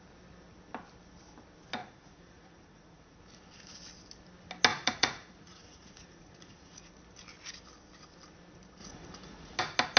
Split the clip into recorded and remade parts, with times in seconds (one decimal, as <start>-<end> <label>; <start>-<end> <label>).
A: 0.0-1.8 recorded; 1.8-3.2 remade; 3.2-4.7 recorded; 4.7-6.9 remade; 6.9-8.8 recorded; 8.8-9.6 remade; 9.6-10.0 recorded